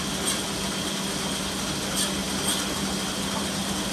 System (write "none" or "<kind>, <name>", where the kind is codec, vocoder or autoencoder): none